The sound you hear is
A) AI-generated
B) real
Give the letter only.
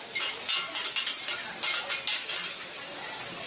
B